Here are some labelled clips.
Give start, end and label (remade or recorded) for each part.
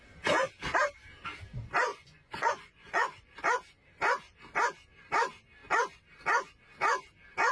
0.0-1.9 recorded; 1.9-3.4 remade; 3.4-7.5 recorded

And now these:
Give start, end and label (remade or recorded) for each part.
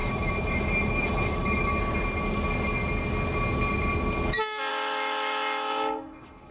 0.0-1.8 remade; 1.8-4.7 recorded; 4.7-6.5 remade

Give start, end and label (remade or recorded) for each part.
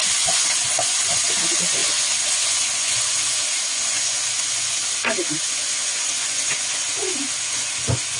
0.0-4.8 remade; 4.8-5.4 recorded; 5.4-8.2 remade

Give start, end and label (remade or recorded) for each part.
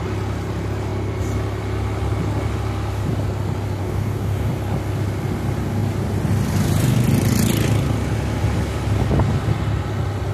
0.0-3.8 recorded; 3.8-4.5 remade; 4.5-10.3 recorded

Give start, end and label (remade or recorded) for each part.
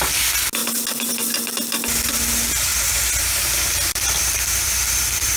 0.0-2.7 recorded; 2.7-5.4 remade